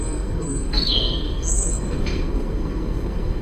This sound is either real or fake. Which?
fake